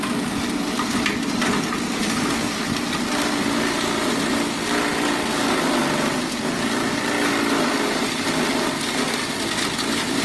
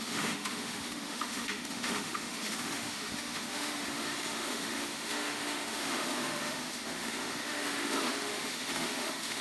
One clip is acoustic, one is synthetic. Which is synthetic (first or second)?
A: second